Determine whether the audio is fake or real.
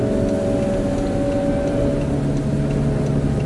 real